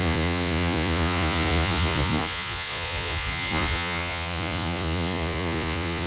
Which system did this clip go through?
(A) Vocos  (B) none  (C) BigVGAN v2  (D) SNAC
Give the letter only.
A